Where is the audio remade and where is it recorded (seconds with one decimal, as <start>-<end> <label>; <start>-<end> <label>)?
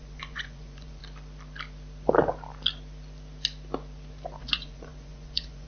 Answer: 0.0-1.0 remade; 1.0-4.4 recorded; 4.4-5.7 remade